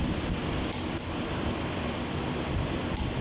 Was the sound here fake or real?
real